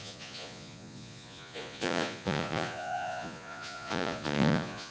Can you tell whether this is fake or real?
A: fake